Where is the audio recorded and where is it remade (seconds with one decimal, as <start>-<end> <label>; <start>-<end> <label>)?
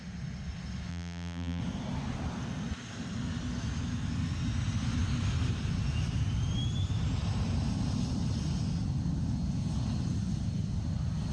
0.0-0.9 recorded; 0.9-1.6 remade; 1.6-11.3 recorded